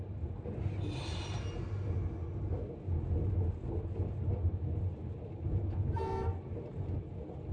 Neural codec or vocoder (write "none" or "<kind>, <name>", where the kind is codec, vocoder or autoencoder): none